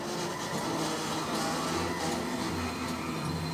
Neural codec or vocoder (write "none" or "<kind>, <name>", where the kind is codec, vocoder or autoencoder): none